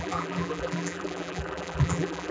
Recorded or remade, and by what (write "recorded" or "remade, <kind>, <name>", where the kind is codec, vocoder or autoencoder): remade, vocoder, BigVGAN v2